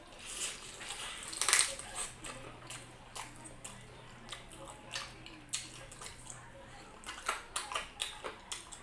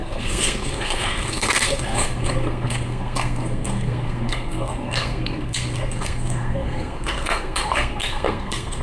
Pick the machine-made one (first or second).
second